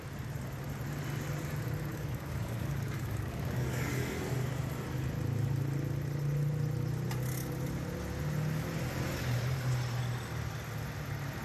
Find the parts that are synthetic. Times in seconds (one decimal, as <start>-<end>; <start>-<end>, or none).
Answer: 1.9-3.9